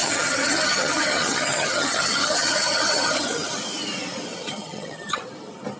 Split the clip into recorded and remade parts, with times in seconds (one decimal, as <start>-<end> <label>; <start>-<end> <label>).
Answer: 0.0-3.5 remade; 3.5-4.4 recorded; 4.4-5.2 remade; 5.2-5.8 recorded

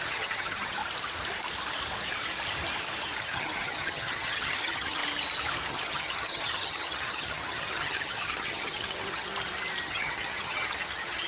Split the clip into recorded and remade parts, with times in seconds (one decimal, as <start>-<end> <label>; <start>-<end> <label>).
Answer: 0.0-0.8 remade; 0.8-3.2 recorded; 3.2-5.0 remade; 5.0-5.7 recorded; 5.7-9.3 remade; 9.3-9.8 recorded; 9.8-11.3 remade

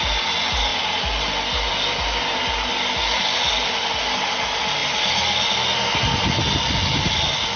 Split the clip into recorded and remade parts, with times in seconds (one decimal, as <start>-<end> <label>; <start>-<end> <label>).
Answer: 0.0-7.6 recorded

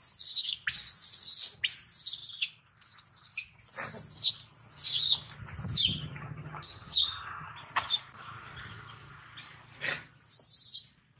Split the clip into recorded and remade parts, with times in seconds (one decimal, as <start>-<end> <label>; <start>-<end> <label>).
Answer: 0.0-5.9 recorded; 5.9-7.5 remade; 7.5-11.2 recorded

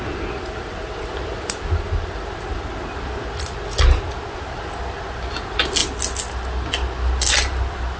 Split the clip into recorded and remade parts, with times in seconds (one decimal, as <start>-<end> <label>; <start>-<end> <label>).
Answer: 0.0-8.0 recorded

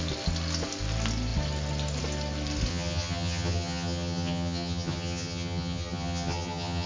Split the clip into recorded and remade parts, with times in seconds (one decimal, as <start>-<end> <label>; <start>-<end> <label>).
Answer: 0.0-2.7 recorded; 2.7-6.9 remade

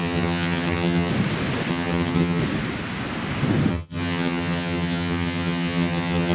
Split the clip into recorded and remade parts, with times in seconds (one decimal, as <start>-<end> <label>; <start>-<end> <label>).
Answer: 0.0-1.1 remade; 1.1-1.7 recorded; 1.7-2.4 remade; 2.4-3.7 recorded; 3.7-6.3 remade

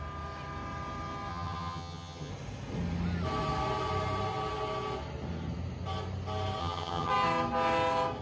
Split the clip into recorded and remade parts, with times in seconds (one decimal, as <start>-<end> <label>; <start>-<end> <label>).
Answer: 0.0-1.3 recorded; 1.3-2.3 remade; 2.3-6.6 recorded; 6.6-7.1 remade; 7.1-8.2 recorded